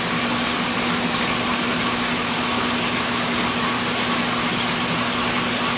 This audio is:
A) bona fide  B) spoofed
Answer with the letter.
A